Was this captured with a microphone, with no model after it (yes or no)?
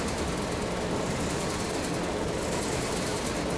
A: yes